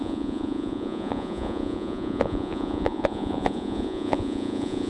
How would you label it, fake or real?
fake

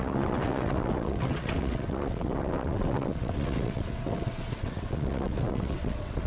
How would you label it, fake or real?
fake